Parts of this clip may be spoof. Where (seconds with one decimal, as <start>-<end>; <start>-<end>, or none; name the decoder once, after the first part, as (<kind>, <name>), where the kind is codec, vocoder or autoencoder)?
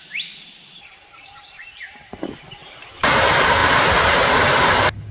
1.6-2.2 (vocoder, BigVGAN v2); 2.6-3.2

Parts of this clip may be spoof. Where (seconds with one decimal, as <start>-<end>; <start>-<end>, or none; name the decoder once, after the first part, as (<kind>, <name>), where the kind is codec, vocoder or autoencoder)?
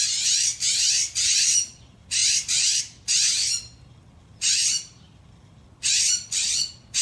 4.6-5.2 (vocoder, BigVGAN v2)